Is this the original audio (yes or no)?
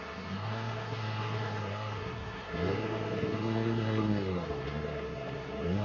no